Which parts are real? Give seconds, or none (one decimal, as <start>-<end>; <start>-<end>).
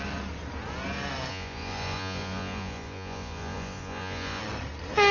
0.0-1.3; 4.4-5.1